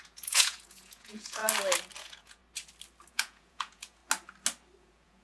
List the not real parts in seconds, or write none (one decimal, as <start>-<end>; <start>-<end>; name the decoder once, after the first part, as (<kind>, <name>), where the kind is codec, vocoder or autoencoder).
0.0-1.4 (vocoder, Vocos); 2.0-2.4; 3.1-4.0; 4.8-5.2